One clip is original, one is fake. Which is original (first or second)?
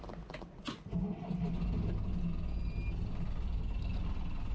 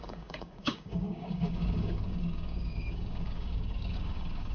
first